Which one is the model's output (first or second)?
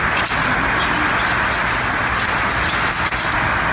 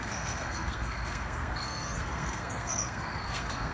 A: second